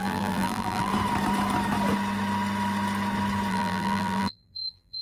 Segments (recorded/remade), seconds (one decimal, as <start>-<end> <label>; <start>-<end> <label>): 0.0-0.9 remade; 0.9-3.5 recorded; 3.5-5.0 remade